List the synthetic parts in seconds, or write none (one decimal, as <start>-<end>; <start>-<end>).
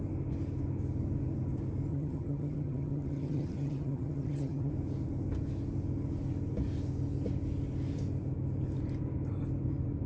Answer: 1.9-4.7